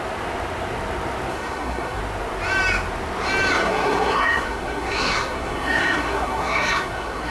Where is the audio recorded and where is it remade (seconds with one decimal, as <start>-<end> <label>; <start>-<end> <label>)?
0.0-1.3 recorded; 1.3-2.0 remade; 2.0-3.6 recorded; 3.6-7.3 remade